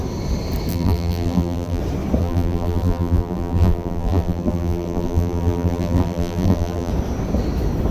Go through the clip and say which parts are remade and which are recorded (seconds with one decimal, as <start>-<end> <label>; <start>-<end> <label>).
0.0-0.7 recorded; 0.7-1.8 remade; 1.8-2.2 recorded; 2.2-6.9 remade; 6.9-7.9 recorded